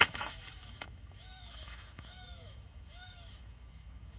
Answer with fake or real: fake